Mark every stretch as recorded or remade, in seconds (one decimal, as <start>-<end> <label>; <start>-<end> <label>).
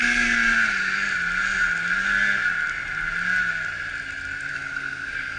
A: 0.0-4.5 recorded; 4.5-5.4 remade